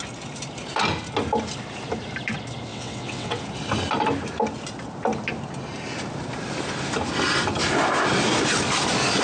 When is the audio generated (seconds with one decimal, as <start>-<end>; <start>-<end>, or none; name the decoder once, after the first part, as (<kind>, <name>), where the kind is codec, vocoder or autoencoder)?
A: 2.7-3.4 (vocoder, WaveNeXt)